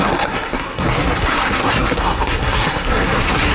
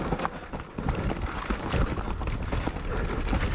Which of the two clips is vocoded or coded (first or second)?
first